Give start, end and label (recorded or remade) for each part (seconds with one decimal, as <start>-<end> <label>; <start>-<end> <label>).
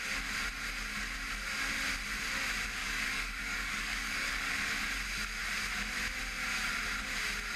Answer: 0.0-2.8 recorded; 2.8-4.5 remade; 4.5-7.6 recorded